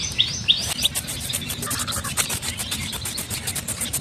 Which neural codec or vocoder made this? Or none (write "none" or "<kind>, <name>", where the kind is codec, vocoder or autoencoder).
vocoder, BigVGAN v2